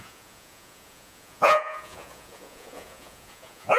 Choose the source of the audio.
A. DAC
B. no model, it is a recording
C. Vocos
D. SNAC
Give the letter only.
C